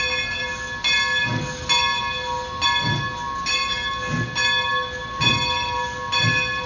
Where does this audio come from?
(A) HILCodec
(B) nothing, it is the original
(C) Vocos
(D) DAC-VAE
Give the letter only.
B